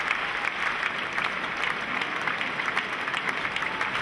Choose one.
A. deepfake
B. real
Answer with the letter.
B